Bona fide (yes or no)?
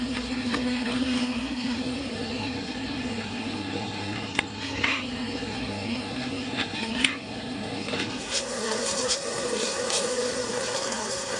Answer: no